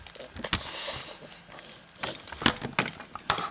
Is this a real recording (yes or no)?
yes